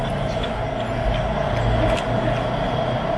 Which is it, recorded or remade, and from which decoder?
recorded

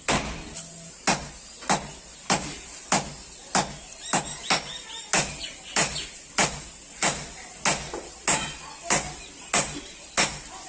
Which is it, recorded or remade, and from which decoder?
recorded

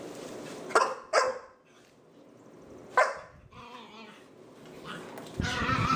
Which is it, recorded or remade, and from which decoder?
recorded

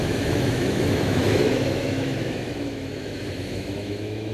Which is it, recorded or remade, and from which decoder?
remade, autoencoder, DAC-VAE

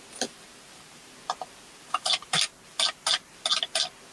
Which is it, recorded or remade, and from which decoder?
recorded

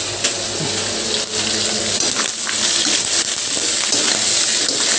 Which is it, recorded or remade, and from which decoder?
recorded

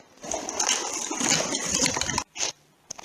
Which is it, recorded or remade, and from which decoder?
recorded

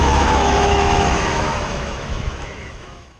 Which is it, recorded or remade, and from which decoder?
remade, autoencoder, DAC-VAE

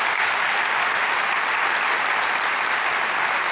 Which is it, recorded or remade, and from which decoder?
recorded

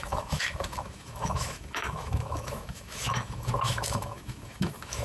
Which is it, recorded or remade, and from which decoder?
remade, autoencoder, DAC-VAE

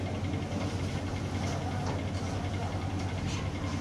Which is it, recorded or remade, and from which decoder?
recorded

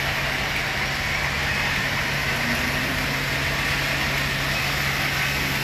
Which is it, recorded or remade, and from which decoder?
recorded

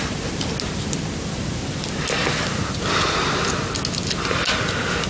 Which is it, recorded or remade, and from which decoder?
recorded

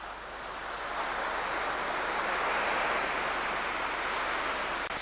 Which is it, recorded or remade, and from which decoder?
recorded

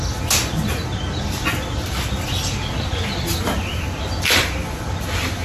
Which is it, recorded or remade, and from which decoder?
recorded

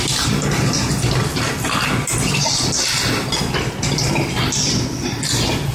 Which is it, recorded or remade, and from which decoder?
recorded